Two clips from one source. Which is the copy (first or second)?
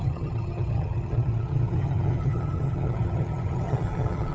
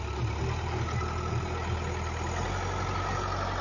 first